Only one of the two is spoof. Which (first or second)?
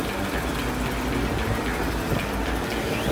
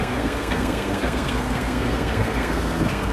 second